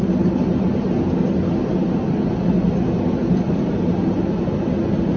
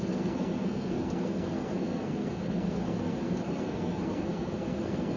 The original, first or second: first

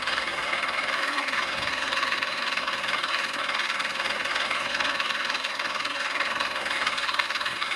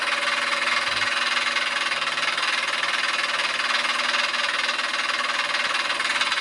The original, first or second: second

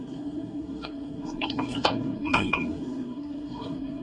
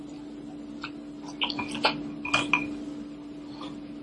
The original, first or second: second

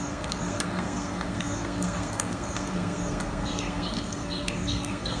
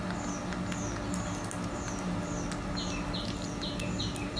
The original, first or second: second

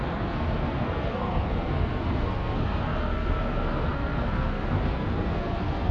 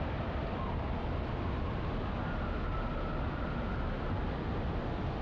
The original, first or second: second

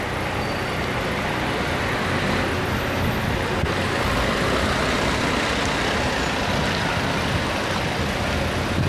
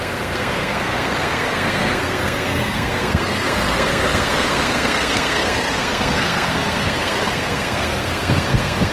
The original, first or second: first